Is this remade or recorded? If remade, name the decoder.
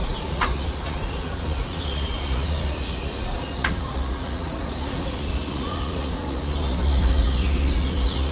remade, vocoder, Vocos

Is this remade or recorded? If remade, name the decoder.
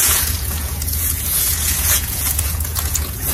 remade, vocoder, Vocos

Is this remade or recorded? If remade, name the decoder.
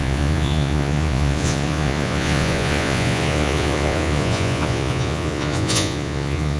remade, vocoder, Vocos